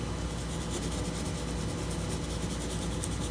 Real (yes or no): yes